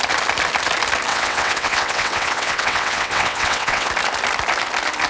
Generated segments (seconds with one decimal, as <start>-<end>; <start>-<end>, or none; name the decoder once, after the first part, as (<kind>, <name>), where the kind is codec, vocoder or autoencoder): 1.1-3.9 (vocoder, WaveNeXt)